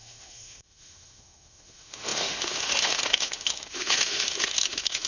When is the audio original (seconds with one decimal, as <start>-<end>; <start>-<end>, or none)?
none